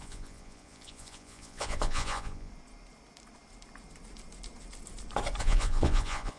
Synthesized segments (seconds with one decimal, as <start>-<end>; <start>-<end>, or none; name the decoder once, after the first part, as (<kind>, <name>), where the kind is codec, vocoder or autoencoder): 0.0-2.5 (vocoder, Vocos); 5.4-6.4